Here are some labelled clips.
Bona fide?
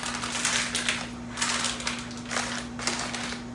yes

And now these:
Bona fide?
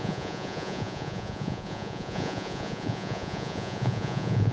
no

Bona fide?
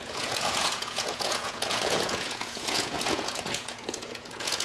no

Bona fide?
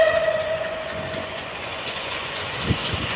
no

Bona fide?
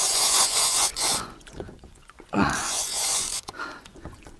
no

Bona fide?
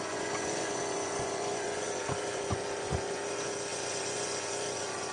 no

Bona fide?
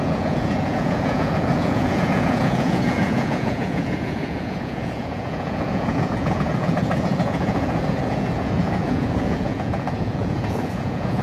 no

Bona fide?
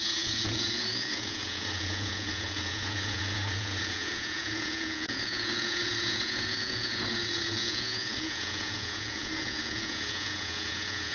no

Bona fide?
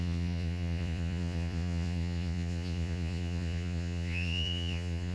no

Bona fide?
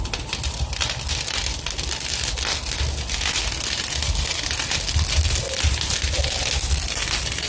yes